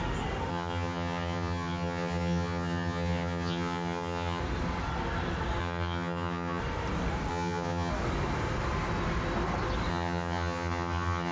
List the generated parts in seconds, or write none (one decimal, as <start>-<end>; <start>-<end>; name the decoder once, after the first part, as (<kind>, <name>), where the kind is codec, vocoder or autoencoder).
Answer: 0.5-4.4 (vocoder, HiFi-GAN); 5.6-6.6; 7.3-7.9; 9.9-11.3